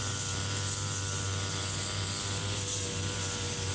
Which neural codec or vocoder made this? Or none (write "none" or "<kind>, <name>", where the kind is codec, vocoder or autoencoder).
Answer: none